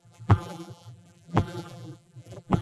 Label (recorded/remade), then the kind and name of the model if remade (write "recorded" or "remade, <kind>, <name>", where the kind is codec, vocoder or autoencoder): remade, vocoder, BigVGAN v2